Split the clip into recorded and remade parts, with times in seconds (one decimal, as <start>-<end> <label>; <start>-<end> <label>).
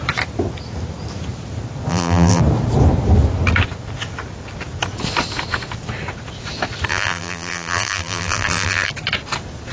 0.0-1.9 recorded; 1.9-2.4 remade; 2.4-6.9 recorded; 6.9-8.9 remade; 8.9-9.7 recorded